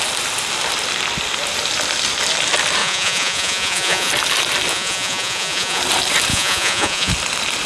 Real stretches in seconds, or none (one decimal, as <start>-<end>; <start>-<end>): 0.0-2.8; 4.1-4.7; 5.8-6.3; 7.1-7.7